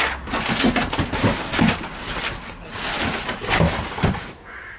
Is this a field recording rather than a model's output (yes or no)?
yes